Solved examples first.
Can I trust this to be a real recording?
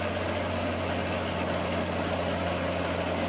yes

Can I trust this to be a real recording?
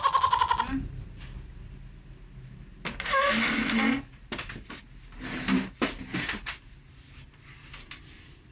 yes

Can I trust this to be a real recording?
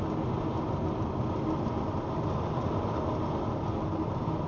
yes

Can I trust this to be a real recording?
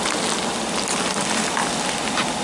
yes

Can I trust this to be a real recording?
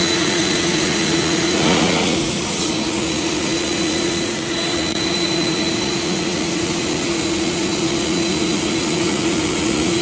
no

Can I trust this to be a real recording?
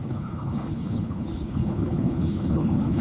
no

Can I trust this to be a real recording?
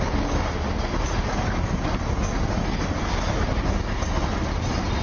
yes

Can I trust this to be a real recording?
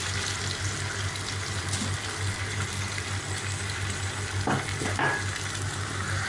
yes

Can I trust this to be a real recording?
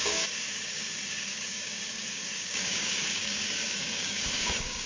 no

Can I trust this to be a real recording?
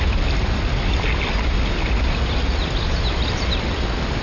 yes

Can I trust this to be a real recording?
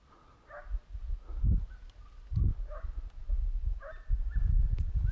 yes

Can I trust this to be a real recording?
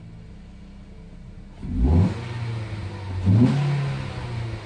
yes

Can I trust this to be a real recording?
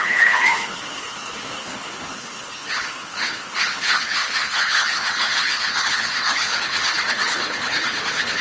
no